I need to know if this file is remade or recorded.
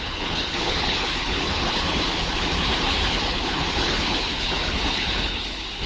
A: remade